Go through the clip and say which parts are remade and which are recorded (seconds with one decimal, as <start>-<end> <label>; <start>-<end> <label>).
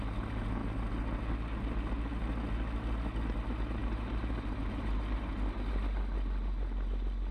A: 0.0-3.8 recorded; 3.8-5.3 remade; 5.3-7.3 recorded